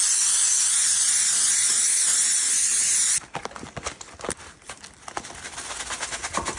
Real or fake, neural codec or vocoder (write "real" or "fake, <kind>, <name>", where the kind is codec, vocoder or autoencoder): real